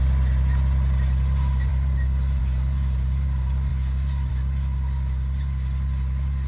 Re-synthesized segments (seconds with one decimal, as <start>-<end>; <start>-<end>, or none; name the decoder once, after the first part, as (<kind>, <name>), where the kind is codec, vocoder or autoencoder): 1.7-2.4 (vocoder, BigVGAN v2)